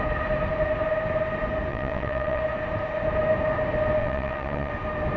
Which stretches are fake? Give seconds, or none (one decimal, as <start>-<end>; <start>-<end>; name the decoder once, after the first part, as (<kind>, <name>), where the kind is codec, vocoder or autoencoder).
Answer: 1.7-2.4 (vocoder, WaveNeXt); 4.0-4.7